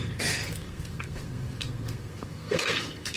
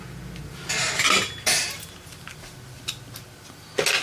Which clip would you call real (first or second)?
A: second